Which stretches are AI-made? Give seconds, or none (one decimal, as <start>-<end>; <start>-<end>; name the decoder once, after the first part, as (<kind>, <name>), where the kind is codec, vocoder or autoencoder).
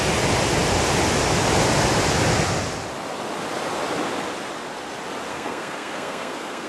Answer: 5.3-6.7 (codec, SNAC)